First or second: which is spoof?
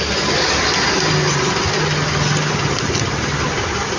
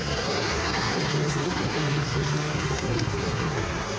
second